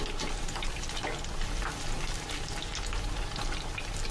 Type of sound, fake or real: real